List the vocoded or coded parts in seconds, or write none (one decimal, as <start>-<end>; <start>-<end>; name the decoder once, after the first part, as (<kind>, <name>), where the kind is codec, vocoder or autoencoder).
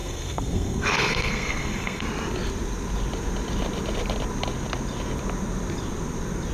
0.0-2.0 (codec, SNAC)